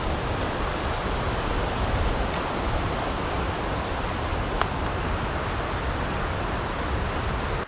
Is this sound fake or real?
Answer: real